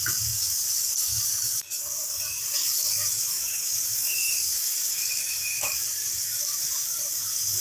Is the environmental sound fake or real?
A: fake